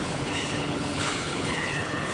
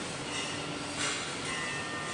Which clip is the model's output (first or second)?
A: first